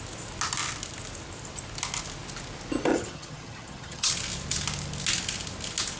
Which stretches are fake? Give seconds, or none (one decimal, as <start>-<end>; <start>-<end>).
2.9-4.1